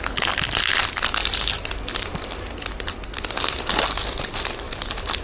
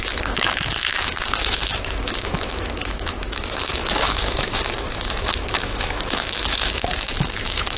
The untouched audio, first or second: first